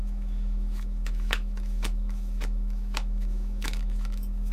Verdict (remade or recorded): remade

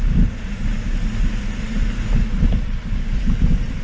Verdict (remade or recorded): recorded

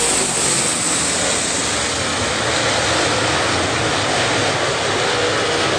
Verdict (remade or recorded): recorded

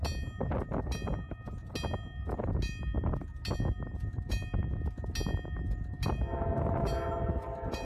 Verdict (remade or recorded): recorded